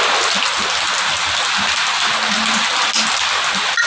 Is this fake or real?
real